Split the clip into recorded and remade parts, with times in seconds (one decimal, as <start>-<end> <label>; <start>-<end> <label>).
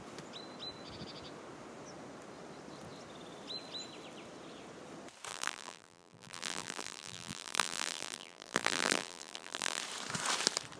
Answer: 0.0-5.3 recorded; 5.3-9.8 remade; 9.8-10.8 recorded